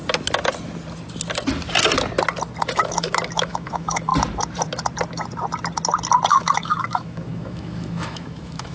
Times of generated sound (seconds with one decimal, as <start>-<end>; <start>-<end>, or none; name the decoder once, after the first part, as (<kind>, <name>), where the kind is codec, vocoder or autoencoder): 2.7-4.1 (autoencoder, DAC-VAE); 6.3-8.7